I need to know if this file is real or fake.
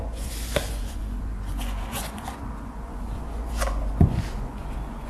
fake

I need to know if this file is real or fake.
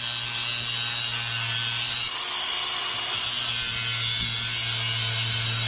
real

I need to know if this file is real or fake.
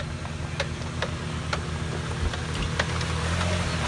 real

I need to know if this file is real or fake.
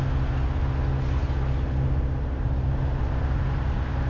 real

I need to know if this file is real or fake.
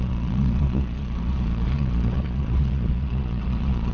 fake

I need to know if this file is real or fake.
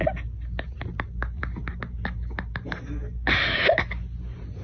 real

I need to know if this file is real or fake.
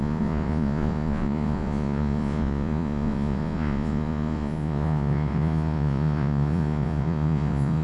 fake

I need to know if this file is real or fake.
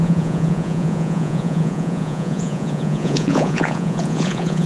fake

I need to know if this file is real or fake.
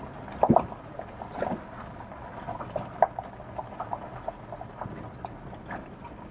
real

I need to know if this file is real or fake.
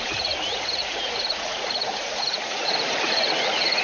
fake